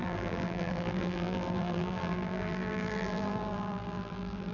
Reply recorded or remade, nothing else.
remade